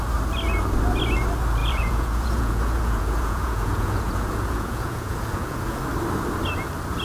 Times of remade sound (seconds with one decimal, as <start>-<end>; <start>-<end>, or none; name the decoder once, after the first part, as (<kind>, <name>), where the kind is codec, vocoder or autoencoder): 1.6-5.8 (vocoder, Vocos)